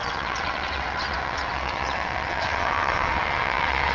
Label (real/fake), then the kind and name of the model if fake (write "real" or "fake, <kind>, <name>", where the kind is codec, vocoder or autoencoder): fake, vocoder, WaveNeXt